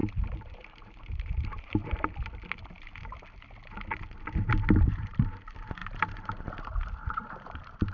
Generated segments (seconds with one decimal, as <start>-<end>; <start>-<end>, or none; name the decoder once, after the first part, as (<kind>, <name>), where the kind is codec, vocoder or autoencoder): 0.0-1.8 (vocoder, BigVGAN v2); 4.8-7.9